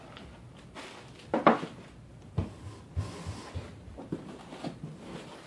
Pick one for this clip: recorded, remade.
recorded